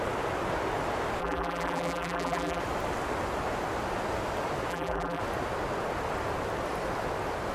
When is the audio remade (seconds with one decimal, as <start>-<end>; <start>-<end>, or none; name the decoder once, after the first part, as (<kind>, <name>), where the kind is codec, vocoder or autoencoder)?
1.2-2.6 (vocoder, BigVGAN v2); 4.7-5.2